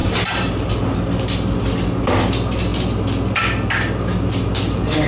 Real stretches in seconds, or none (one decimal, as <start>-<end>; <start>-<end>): 0.7-5.1